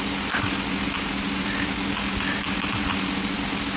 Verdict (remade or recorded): recorded